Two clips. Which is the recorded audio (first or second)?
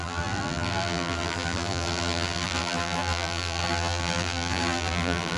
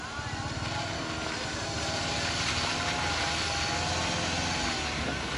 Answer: second